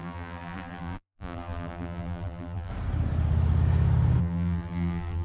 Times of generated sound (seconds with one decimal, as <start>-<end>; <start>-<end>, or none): 0.0-2.7; 4.2-5.2